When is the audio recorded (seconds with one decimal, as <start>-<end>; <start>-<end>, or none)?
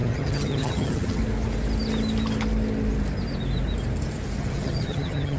1.2-4.4